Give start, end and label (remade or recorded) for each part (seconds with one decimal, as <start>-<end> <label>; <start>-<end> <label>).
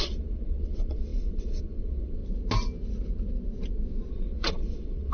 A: 0.0-2.2 remade; 2.2-4.1 recorded; 4.1-5.1 remade